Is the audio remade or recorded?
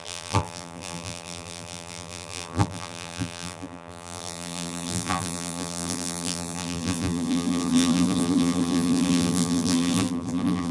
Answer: remade